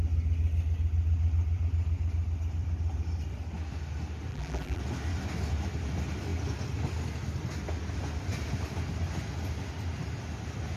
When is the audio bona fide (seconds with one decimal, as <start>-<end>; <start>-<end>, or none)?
0.0-4.3; 4.8-10.8